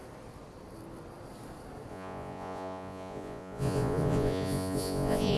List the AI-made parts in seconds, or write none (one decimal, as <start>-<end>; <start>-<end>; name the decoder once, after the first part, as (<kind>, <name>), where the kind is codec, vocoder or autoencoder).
1.9-5.4 (vocoder, Vocos)